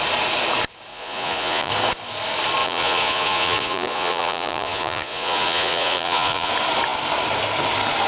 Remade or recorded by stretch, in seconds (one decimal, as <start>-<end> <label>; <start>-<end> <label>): 0.0-0.9 recorded; 0.9-1.7 remade; 1.7-2.6 recorded; 2.6-6.5 remade; 6.5-8.1 recorded